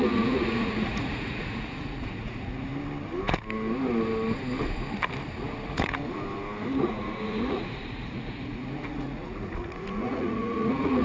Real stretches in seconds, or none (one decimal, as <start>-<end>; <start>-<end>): 2.7-5.4; 6.0-6.8